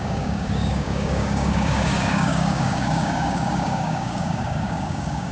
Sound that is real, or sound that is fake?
fake